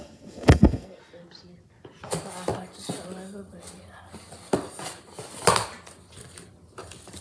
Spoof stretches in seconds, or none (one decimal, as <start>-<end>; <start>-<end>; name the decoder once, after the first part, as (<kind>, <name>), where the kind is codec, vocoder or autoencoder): 0.0-1.0 (codec, SNAC)